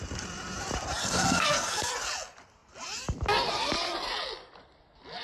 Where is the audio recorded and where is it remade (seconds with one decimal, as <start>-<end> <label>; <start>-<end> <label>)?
0.0-1.0 recorded; 1.0-1.9 remade; 1.9-5.2 recorded